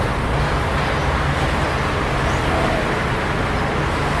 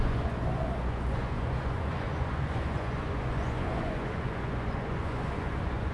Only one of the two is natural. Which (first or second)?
first